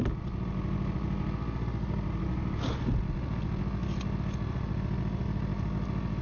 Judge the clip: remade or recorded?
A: recorded